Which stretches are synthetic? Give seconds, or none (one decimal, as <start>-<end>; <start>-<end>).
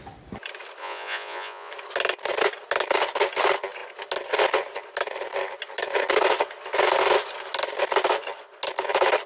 0.8-1.7